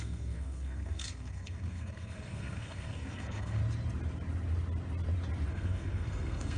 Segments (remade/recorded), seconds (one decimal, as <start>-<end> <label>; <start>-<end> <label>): 0.0-3.6 remade; 3.6-5.5 recorded; 5.5-6.6 remade